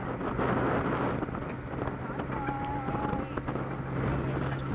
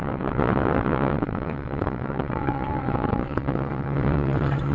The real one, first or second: first